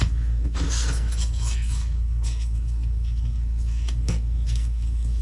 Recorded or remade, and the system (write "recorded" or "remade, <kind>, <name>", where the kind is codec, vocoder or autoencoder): remade, codec, SNAC